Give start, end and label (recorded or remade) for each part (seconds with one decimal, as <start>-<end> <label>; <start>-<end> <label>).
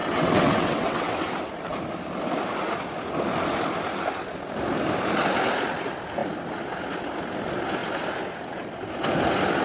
0.0-1.1 remade; 1.1-9.6 recorded